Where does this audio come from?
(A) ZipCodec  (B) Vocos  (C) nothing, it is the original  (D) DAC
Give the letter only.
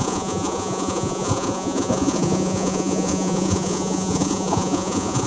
B